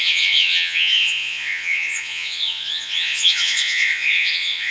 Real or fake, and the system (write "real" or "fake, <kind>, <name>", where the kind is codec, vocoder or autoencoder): fake, vocoder, Vocos